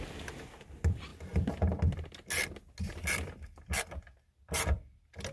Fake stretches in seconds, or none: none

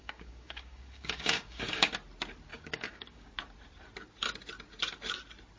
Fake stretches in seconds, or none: 0.0-1.9 (codec, DAC); 2.5-3.3

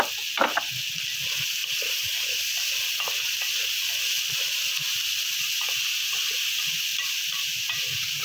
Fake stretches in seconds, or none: 6.9-8.2 (vocoder, BigVGAN v2)

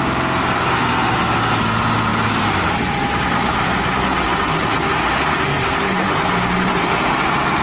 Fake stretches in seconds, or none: 2.1-3.9 (vocoder, BigVGAN v2); 4.3-6.7

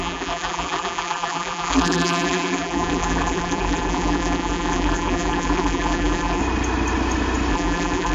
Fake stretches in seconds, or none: 0.0-6.4 (vocoder, BigVGAN v2); 7.5-8.1

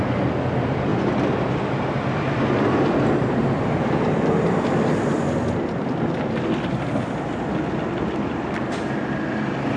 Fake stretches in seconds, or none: none

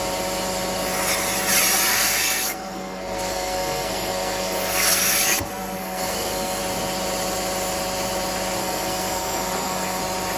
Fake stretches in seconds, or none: 1.9-6.6 (codec, SNAC); 8.6-10.0

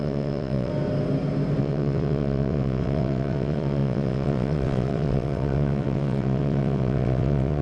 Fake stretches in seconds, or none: 0.0-0.7 (vocoder, WaveNeXt); 1.6-7.6